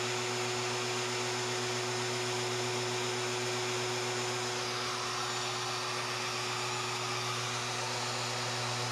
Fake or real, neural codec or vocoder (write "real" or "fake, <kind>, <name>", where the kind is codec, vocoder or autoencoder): real